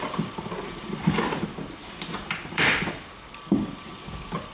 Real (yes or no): no